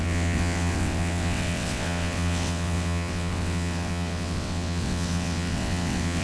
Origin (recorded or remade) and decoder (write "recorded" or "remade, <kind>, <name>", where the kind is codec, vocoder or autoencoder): remade, vocoder, WaveNeXt